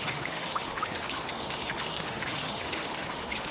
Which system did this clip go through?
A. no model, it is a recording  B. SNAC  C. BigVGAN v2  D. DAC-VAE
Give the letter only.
D